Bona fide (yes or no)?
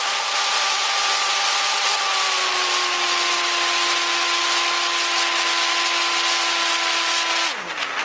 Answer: yes